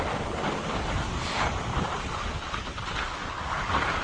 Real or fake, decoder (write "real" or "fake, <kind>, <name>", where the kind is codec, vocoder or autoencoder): real